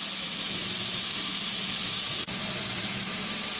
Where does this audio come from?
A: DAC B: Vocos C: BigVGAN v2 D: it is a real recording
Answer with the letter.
B